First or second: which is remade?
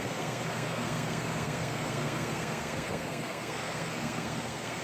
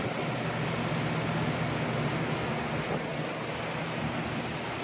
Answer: first